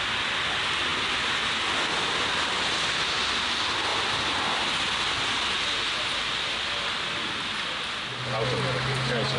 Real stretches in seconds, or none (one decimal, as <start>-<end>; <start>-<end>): 0.0-9.4